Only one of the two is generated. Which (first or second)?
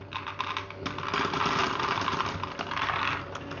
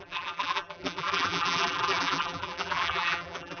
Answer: second